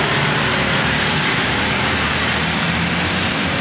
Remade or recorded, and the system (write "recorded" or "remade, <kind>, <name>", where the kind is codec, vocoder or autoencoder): remade, vocoder, BigVGAN v2